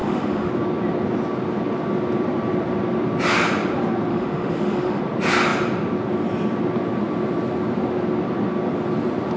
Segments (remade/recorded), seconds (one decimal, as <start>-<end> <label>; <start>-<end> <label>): 0.0-0.5 remade; 0.5-4.1 recorded; 4.1-5.0 remade; 5.0-9.4 recorded